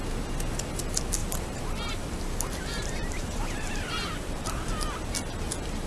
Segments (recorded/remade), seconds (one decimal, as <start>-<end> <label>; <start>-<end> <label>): 0.0-1.2 recorded; 1.2-4.7 remade; 4.7-5.9 recorded